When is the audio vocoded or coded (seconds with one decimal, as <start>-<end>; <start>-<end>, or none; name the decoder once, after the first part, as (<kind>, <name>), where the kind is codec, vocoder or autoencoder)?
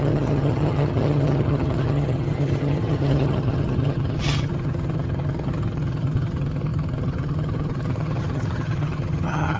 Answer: 0.0-9.6 (vocoder, HiFi-GAN)